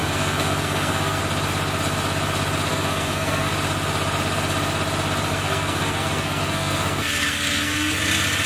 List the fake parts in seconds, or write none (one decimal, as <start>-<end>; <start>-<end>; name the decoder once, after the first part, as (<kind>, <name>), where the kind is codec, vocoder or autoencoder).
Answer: 0.0-1.2 (codec, SNAC); 2.7-3.5; 5.3-8.0